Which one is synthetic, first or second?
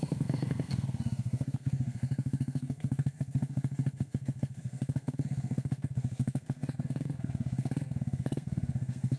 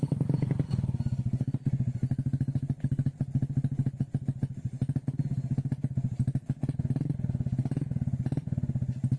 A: first